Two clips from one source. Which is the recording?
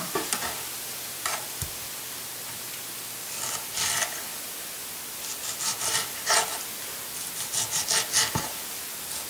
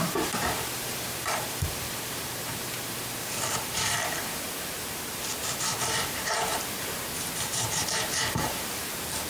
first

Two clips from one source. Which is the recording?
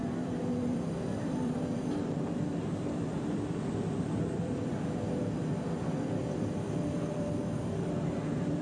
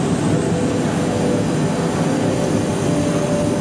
second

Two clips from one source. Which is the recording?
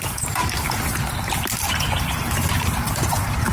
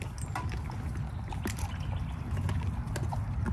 second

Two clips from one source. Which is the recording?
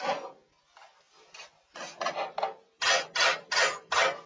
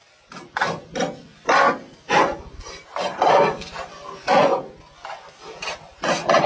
first